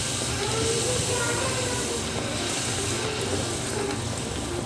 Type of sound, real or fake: real